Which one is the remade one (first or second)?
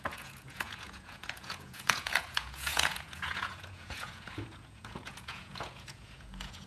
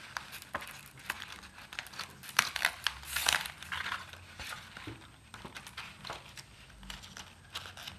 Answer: first